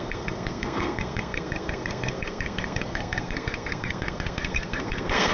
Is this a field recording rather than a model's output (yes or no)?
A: no